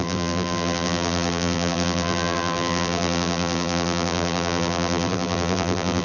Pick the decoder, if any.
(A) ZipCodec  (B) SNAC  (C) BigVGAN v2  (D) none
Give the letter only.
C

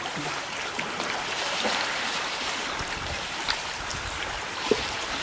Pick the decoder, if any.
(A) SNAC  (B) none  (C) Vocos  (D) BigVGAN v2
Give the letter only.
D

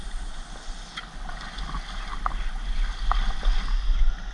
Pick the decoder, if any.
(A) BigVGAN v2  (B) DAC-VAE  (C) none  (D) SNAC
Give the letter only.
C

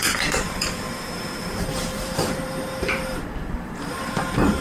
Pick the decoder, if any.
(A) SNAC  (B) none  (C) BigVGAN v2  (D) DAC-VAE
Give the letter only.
C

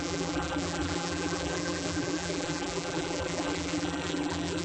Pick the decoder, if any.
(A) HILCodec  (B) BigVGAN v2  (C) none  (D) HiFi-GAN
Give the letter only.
B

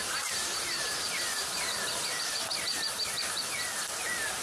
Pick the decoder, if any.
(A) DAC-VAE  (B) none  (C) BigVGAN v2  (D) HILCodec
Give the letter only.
C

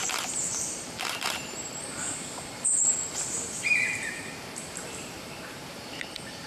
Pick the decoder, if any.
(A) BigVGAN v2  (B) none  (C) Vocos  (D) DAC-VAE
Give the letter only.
A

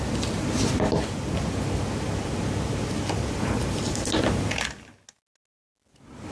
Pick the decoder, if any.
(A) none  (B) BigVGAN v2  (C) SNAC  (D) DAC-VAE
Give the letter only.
A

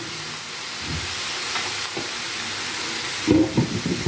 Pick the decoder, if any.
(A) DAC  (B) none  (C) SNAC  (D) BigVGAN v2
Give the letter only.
B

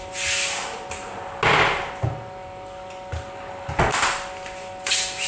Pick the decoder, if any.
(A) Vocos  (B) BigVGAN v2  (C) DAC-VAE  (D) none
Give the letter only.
D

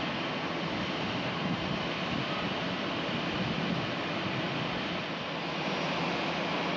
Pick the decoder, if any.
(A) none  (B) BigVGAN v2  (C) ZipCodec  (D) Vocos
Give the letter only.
A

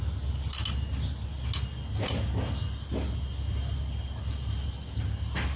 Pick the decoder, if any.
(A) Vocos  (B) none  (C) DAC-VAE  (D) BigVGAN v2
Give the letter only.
B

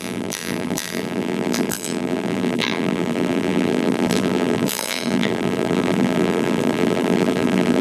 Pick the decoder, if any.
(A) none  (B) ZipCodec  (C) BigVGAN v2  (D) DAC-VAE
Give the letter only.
C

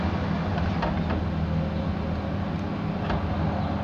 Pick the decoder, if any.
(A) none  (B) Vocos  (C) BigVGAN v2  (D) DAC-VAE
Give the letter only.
A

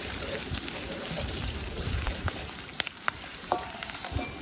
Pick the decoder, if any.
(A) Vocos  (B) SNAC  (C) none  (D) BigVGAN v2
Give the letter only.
D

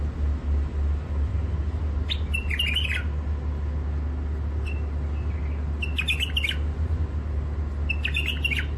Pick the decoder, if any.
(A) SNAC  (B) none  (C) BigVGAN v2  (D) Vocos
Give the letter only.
B